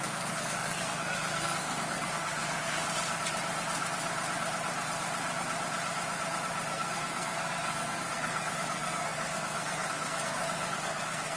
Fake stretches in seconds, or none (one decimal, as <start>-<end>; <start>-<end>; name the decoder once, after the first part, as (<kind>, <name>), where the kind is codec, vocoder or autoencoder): 0.0-2.8 (codec, SNAC); 6.7-11.4